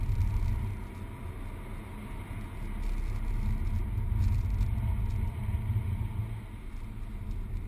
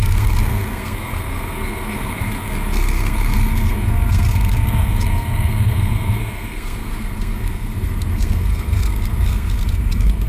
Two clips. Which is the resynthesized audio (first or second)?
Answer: second